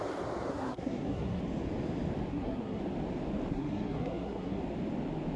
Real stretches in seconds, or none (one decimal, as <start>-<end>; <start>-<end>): 0.0-0.5; 1.4-2.3; 2.8-3.5; 4.6-5.4